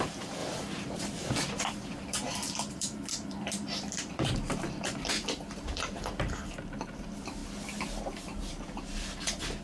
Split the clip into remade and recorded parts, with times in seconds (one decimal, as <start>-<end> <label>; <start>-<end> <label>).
0.0-7.4 remade; 7.4-8.0 recorded; 8.0-9.6 remade